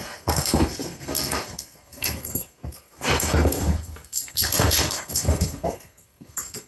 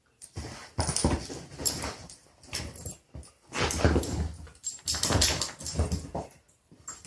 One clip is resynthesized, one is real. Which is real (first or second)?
second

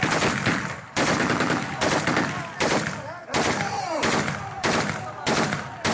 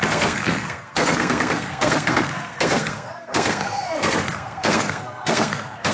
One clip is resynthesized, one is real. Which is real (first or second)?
first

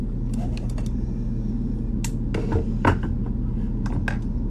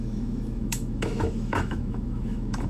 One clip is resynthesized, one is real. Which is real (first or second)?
first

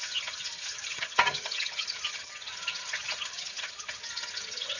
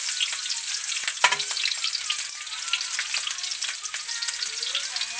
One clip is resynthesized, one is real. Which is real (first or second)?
second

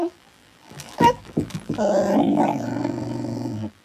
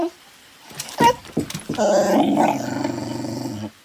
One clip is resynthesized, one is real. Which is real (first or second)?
second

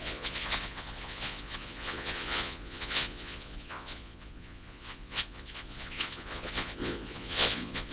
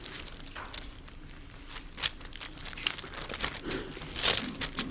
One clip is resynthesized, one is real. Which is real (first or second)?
second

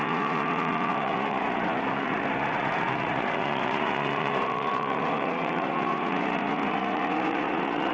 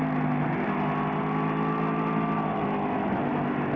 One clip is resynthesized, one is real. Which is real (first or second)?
second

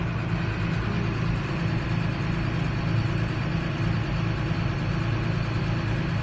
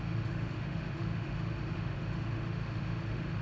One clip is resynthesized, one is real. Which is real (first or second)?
first